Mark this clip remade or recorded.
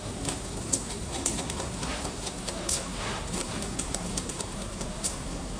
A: remade